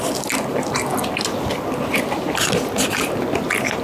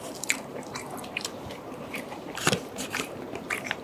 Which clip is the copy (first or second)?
second